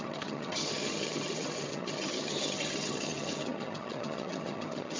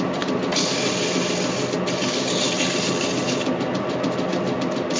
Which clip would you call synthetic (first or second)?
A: first